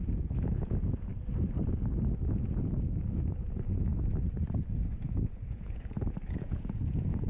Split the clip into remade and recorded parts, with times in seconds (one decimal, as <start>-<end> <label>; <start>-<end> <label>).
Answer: 0.0-1.1 remade; 1.1-2.3 recorded; 2.3-3.9 remade; 3.9-4.7 recorded; 4.7-7.3 remade